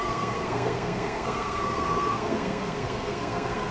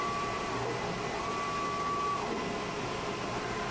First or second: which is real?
second